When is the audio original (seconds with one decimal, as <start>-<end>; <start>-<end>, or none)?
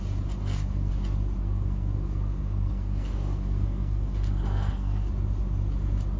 0.0-0.4; 0.9-1.4; 5.1-6.2